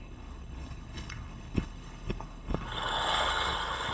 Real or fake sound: fake